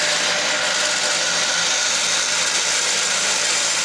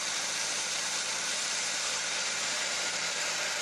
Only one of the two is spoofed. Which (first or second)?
second